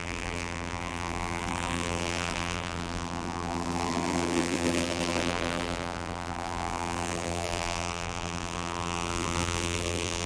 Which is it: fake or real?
fake